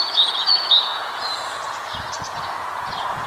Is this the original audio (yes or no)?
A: no